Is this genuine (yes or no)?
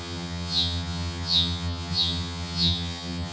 no